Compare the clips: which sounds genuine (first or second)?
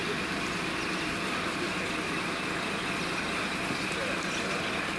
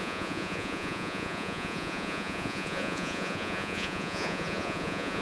first